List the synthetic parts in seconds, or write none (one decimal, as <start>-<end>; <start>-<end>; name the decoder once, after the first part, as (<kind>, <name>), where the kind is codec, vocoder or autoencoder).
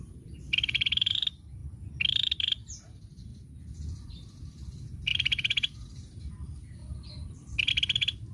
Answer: 0.0-1.6 (vocoder, BigVGAN v2); 2.2-3.3; 4.1-6.8; 7.7-8.3